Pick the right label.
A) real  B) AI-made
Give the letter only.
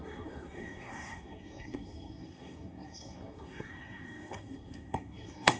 B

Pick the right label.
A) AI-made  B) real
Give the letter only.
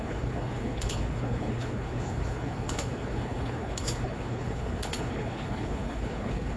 A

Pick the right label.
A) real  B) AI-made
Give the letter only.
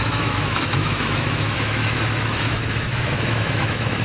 B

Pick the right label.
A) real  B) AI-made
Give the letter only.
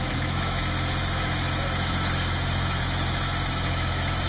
B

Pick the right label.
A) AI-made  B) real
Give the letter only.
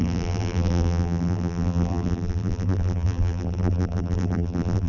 A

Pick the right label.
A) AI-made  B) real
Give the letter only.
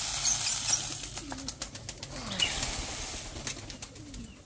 B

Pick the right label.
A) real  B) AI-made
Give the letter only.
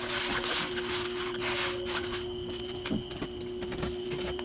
A